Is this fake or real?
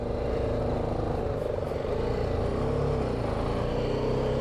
real